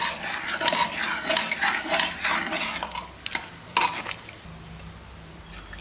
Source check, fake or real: real